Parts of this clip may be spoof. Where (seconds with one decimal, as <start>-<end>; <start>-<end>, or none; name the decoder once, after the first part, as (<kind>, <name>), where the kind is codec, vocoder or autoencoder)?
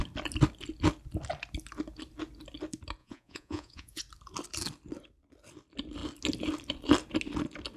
3.0-4.0 (vocoder, Vocos)